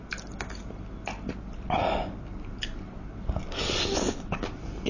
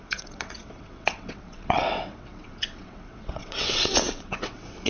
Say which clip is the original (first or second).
first